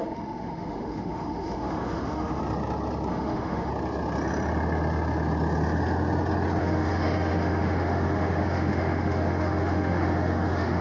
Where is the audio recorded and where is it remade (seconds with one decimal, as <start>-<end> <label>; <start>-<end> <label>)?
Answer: 0.0-2.4 remade; 2.4-3.1 recorded; 3.1-3.7 remade; 3.7-6.6 recorded; 6.6-10.8 remade